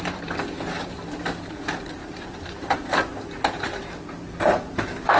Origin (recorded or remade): remade